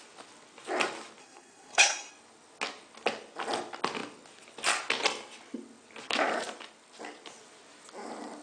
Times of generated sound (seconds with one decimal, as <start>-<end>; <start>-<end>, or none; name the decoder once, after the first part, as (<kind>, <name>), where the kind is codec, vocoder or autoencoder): 1.2-2.1 (codec, SNAC)